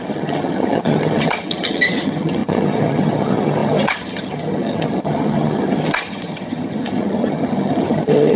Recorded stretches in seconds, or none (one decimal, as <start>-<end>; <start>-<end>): none